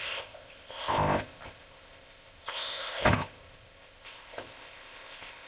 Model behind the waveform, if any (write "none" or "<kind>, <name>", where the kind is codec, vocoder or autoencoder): codec, ZipCodec